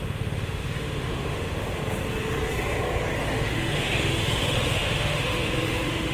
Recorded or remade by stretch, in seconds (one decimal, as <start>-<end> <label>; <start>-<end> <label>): 0.0-1.8 remade; 1.8-3.2 recorded; 3.2-6.1 remade